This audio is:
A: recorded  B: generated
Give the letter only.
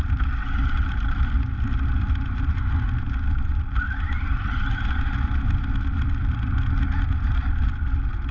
A